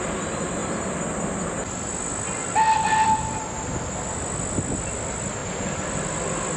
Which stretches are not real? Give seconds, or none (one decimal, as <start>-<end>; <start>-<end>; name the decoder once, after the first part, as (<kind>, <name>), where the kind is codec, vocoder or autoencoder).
none